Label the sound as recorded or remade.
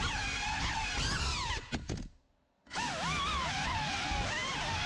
recorded